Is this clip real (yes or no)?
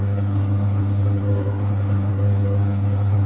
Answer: no